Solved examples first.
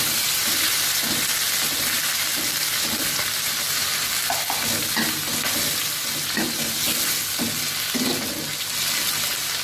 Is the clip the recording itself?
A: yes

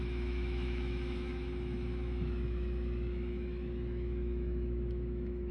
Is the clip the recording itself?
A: no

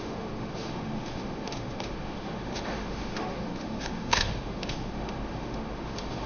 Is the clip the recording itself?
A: no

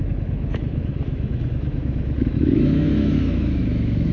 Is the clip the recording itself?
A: no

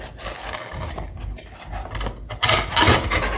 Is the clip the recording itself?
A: yes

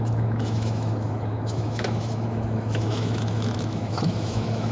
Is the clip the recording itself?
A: no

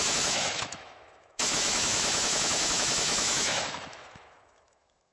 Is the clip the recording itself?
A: no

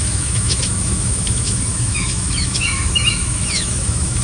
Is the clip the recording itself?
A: no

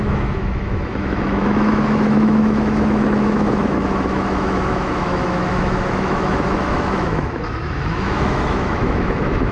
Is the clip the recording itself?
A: no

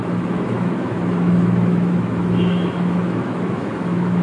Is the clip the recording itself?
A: no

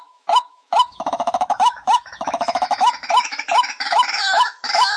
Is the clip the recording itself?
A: no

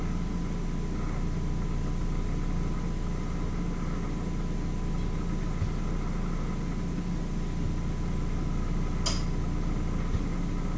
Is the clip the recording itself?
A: yes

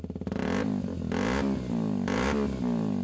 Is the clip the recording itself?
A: yes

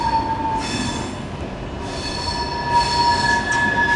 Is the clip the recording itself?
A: yes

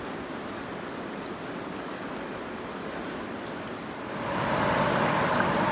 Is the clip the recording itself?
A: yes